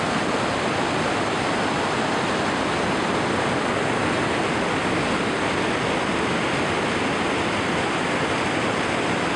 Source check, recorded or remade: recorded